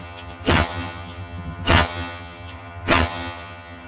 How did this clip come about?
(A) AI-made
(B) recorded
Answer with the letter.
A